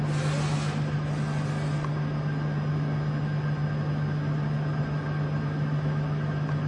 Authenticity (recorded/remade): recorded